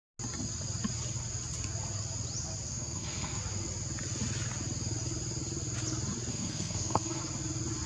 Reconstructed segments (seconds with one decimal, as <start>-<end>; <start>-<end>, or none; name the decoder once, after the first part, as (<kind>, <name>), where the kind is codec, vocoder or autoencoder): 2.7-3.4 (codec, SNAC); 6.3-7.2